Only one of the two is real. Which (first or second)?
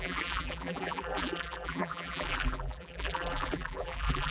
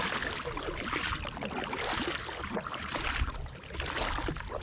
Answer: second